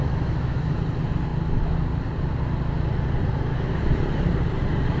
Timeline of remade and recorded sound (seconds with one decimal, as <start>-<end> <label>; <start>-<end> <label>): 0.0-0.8 remade; 0.8-3.5 recorded; 3.5-4.0 remade; 4.0-5.0 recorded